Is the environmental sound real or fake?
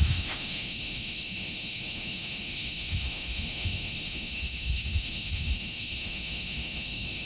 fake